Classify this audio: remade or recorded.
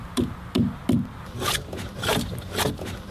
recorded